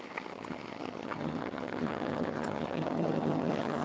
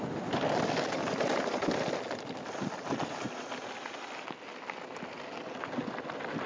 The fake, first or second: first